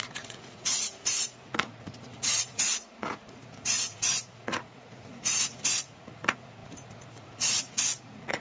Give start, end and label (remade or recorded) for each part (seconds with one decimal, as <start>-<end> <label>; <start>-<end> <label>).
0.0-8.4 remade